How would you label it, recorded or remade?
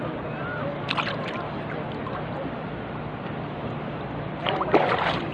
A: recorded